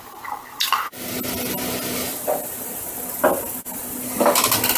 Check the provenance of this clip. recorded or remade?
recorded